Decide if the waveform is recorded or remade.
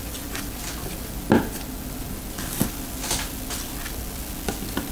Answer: recorded